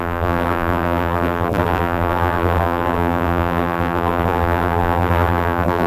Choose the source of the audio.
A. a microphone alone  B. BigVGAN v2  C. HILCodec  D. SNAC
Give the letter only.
B